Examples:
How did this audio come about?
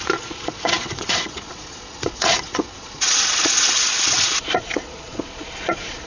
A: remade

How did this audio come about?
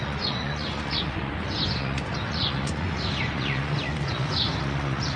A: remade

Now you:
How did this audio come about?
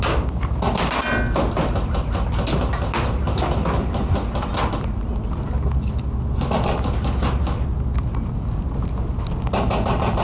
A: recorded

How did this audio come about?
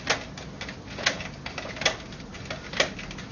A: recorded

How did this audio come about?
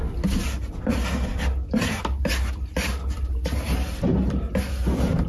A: recorded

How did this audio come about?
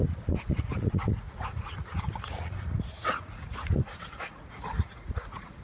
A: remade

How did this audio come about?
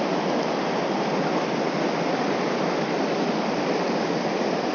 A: recorded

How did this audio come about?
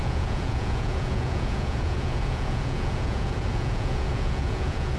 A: remade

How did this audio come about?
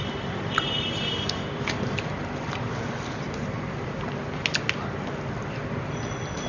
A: recorded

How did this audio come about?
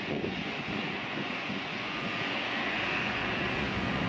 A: remade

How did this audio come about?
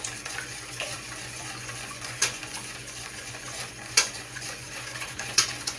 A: remade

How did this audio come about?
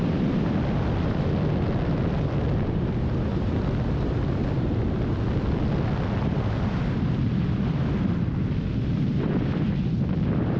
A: recorded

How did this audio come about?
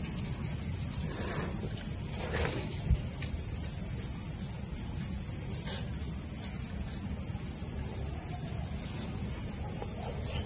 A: recorded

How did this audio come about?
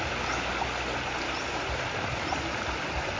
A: recorded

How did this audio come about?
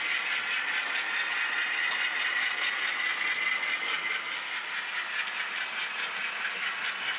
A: recorded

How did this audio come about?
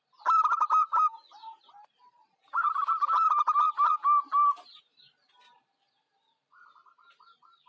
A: recorded